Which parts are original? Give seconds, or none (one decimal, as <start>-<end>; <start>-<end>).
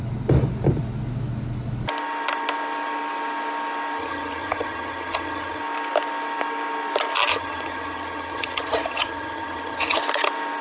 0.0-4.0; 5.6-7.3; 10.0-10.6